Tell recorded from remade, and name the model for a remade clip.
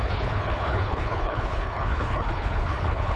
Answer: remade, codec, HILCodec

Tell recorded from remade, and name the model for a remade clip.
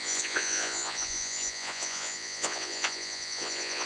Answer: remade, vocoder, Vocos